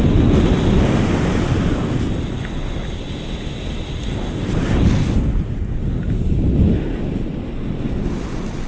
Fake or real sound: real